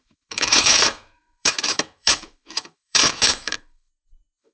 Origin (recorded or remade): remade